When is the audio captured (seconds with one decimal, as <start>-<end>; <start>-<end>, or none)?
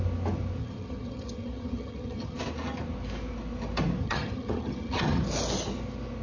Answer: 0.0-0.6; 2.4-4.0; 5.2-6.2